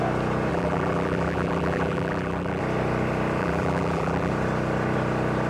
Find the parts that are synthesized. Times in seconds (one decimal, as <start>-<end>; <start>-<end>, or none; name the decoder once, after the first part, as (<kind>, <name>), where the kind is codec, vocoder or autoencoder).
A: 0.5-2.6 (vocoder, BigVGAN v2); 3.4-4.3